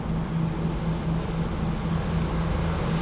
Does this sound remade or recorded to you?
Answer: recorded